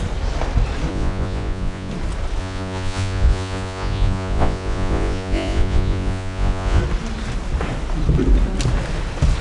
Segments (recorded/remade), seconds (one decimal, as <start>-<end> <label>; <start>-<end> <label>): 0.0-0.9 recorded; 0.9-1.9 remade; 1.9-2.4 recorded; 2.4-6.8 remade; 6.8-9.4 recorded